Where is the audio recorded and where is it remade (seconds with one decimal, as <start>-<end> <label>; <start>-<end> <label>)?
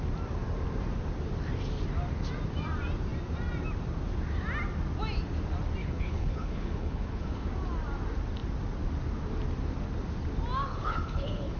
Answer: 0.0-5.8 recorded; 5.8-7.5 remade; 7.5-10.7 recorded; 10.7-11.6 remade